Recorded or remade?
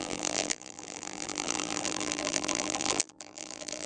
remade